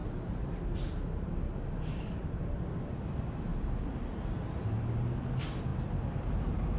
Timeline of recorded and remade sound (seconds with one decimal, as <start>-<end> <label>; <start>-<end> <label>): 0.0-3.5 recorded; 3.5-4.5 remade; 4.5-5.7 recorded; 5.7-6.3 remade; 6.3-6.8 recorded